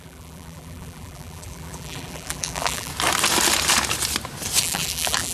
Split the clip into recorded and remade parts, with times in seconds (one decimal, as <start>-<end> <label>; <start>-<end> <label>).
0.0-2.9 remade; 2.9-4.6 recorded; 4.6-5.3 remade